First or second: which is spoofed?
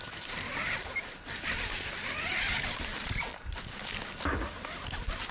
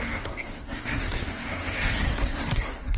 second